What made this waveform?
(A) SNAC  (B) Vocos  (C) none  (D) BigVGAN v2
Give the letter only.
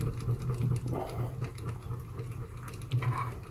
C